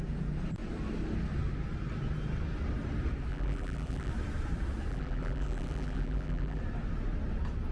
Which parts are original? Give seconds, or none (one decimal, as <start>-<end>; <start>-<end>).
0.0-3.3; 4.1-4.9; 6.6-7.7